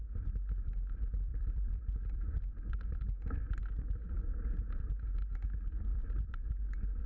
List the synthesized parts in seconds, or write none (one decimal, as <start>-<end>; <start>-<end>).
1.3-4.1; 5.9-6.5